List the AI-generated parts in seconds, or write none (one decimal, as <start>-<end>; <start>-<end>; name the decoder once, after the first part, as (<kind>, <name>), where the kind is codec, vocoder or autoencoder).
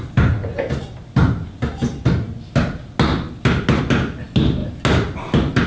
none